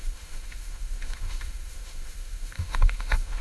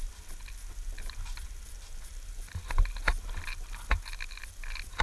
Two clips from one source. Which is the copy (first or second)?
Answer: first